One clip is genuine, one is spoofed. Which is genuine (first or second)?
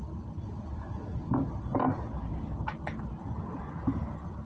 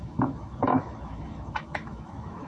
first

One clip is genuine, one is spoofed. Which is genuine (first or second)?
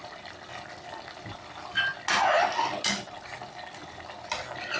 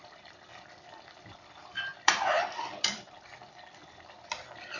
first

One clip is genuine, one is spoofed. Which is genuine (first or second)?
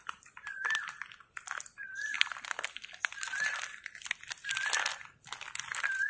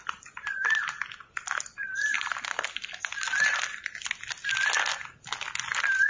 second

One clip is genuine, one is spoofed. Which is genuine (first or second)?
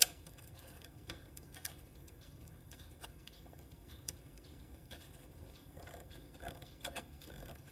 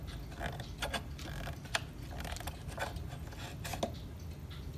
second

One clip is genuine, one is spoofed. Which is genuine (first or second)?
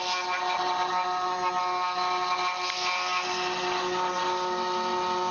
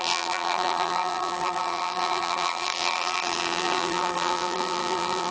first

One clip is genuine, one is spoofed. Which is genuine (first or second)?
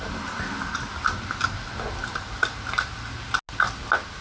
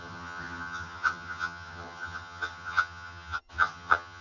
first